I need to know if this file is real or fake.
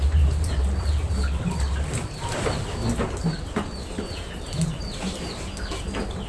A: real